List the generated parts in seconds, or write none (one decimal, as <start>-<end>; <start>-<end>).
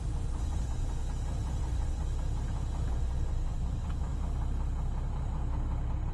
0.0-1.0; 1.6-2.0; 2.9-4.1